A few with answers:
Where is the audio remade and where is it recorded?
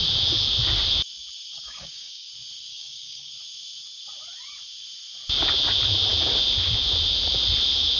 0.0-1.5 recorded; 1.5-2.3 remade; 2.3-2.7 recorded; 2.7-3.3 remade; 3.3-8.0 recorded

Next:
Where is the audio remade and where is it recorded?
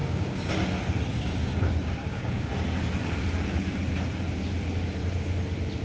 0.0-0.5 remade; 0.5-1.1 recorded; 1.1-2.5 remade; 2.5-5.8 recorded